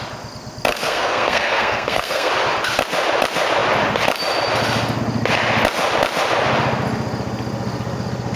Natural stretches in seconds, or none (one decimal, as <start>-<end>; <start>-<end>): 0.0-0.7; 2.3-8.4